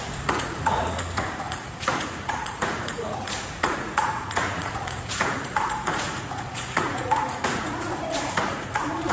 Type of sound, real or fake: fake